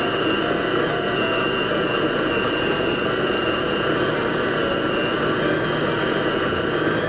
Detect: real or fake real